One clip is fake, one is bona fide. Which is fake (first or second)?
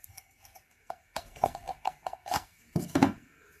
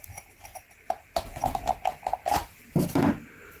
first